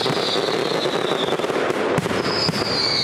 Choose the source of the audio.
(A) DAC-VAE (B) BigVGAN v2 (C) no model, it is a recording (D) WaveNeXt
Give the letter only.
C